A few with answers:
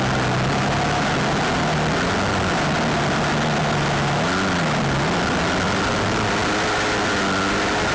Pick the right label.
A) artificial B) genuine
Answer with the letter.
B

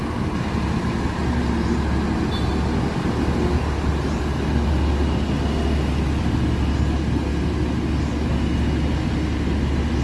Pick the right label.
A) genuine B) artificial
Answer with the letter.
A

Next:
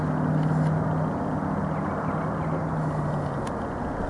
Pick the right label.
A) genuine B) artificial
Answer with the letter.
A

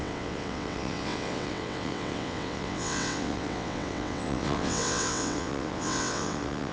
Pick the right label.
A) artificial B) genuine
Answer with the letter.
A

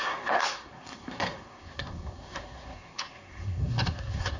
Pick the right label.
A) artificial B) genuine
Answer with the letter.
A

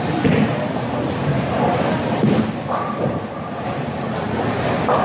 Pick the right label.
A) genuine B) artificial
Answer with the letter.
B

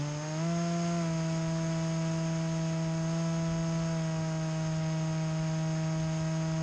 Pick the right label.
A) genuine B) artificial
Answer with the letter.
A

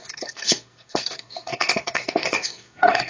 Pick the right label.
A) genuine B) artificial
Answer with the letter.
B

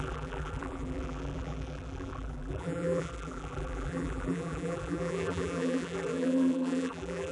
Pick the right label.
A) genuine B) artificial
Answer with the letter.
B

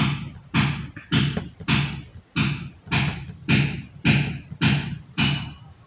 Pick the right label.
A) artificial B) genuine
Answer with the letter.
B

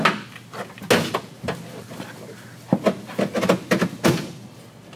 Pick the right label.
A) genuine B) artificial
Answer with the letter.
A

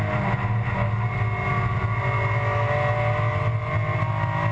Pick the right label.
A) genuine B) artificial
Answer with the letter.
A